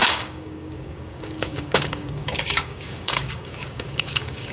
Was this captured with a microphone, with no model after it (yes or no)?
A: no